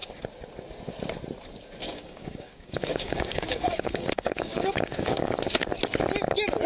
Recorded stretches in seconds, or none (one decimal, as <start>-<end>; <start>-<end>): 0.0-1.8; 5.4-6.7

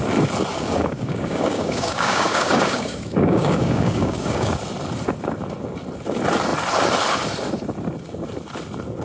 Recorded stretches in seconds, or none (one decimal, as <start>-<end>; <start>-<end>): 0.0-0.5; 4.6-9.0

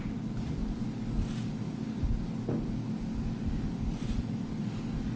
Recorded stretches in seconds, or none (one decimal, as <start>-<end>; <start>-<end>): 0.0-5.2